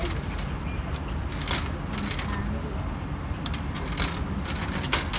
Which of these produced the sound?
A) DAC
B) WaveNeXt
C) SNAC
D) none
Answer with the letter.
D